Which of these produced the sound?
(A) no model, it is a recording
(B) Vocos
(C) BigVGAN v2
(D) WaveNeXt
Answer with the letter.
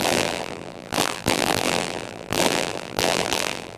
C